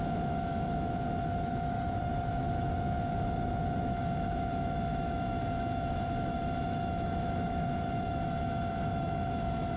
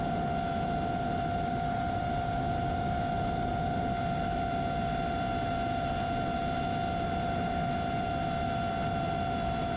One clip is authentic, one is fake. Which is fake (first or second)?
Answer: first